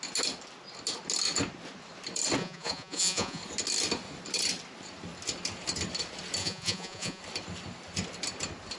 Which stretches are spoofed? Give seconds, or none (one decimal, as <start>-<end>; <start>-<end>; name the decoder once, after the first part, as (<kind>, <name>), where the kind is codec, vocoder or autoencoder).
2.4-3.4 (vocoder, Vocos); 6.4-7.2